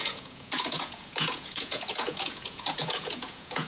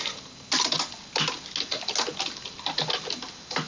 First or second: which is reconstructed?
first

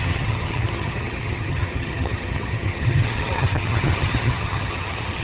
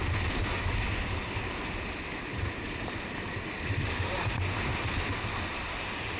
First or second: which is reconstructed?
first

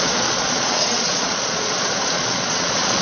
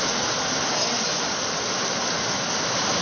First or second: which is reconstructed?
first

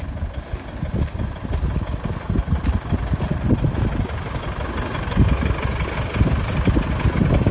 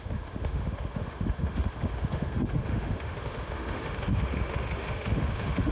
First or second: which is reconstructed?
second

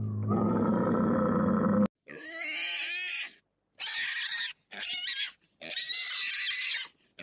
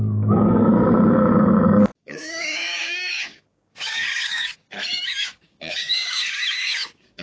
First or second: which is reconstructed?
second